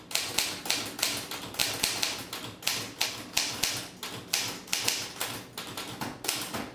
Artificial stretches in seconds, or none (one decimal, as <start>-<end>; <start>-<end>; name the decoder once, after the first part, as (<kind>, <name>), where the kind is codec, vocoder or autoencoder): none